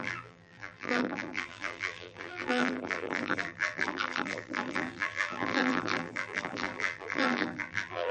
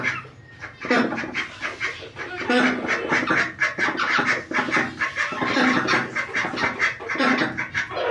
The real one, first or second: second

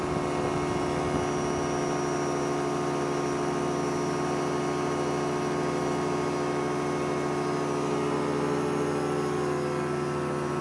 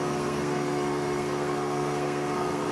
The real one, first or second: first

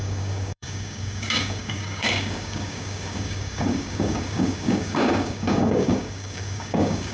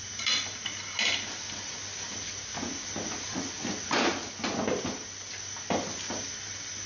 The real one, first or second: second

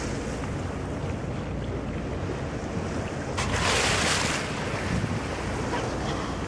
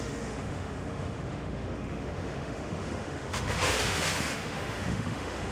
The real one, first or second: first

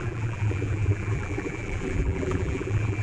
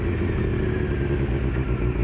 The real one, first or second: second